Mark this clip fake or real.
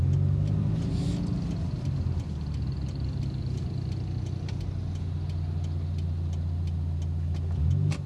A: real